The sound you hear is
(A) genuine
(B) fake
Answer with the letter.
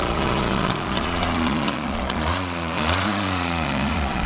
B